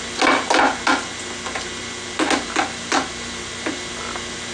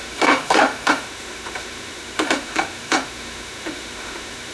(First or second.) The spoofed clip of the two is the second